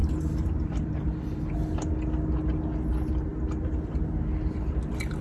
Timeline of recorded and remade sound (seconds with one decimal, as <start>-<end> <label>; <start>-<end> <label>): 0.0-1.4 remade; 1.4-5.2 recorded